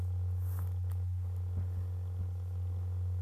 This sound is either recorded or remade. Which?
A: recorded